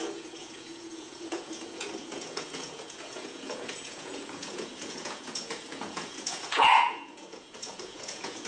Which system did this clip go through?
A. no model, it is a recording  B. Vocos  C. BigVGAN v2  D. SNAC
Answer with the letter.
B